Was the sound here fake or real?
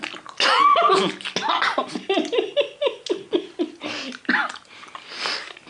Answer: real